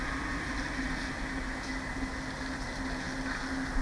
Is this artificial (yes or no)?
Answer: no